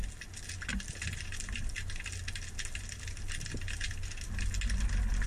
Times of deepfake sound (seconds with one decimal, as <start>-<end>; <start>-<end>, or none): none